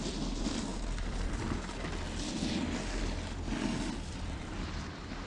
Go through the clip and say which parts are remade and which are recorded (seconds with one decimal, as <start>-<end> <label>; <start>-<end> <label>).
0.0-0.7 remade; 0.7-3.9 recorded; 3.9-5.3 remade